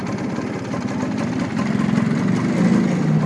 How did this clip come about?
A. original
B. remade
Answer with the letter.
A